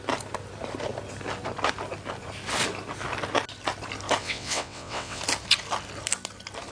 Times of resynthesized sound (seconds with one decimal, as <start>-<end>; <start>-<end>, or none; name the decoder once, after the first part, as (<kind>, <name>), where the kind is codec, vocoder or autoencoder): 4.2-5.2 (vocoder, WaveNeXt)